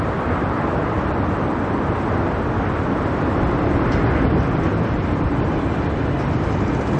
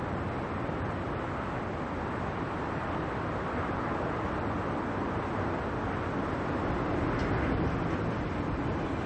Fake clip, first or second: first